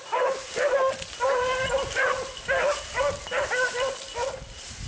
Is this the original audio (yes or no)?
yes